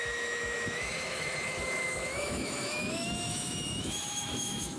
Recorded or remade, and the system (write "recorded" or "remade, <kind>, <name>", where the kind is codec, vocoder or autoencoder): remade, autoencoder, DAC-VAE